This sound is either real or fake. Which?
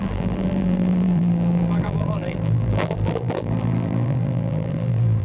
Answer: fake